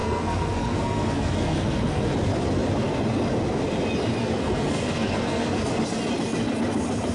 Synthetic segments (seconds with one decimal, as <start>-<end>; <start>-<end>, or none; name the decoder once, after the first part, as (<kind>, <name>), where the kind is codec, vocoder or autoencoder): 0.0-2.0 (codec, SNAC); 4.2-5.7